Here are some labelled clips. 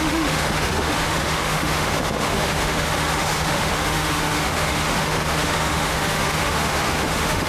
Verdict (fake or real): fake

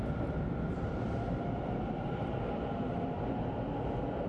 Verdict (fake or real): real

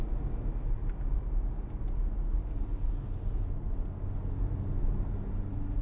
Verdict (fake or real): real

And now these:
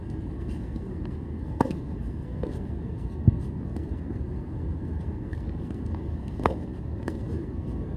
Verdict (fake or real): fake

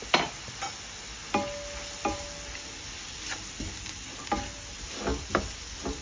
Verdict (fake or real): real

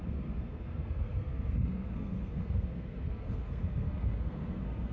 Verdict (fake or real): fake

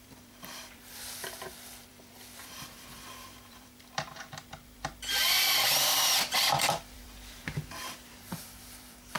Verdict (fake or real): fake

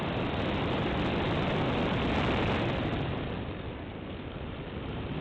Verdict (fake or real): real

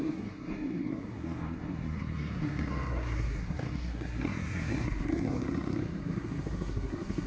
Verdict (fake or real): fake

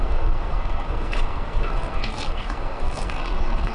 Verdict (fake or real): fake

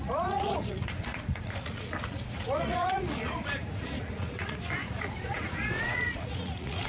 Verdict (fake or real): fake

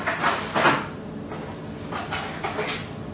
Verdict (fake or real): real